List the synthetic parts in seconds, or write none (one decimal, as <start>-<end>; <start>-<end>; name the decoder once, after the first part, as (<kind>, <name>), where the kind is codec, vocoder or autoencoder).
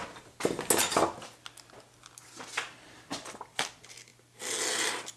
none